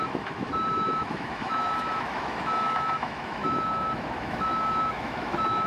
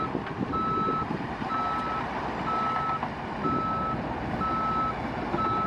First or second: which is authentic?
second